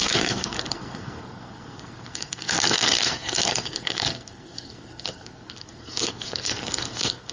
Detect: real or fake fake